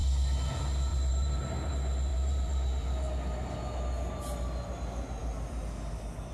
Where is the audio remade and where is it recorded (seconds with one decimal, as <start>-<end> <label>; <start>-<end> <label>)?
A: 0.0-0.9 recorded; 0.9-1.7 remade; 1.7-2.1 recorded; 2.1-3.6 remade; 3.6-6.3 recorded